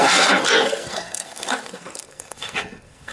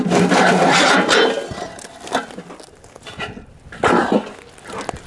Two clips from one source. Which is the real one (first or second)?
second